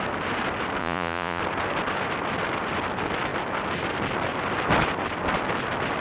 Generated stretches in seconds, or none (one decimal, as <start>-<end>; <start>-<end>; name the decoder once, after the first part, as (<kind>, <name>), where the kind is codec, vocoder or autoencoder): 0.8-1.4 (vocoder, Vocos)

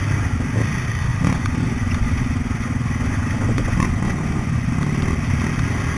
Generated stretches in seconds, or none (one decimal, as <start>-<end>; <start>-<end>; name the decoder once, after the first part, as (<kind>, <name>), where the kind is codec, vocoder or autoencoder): 1.1-4.7 (vocoder, Vocos)

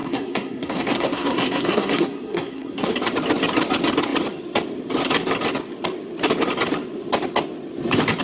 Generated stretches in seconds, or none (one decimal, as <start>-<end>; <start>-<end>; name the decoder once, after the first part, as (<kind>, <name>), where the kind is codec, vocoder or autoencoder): 0.0-2.9 (codec, SNAC)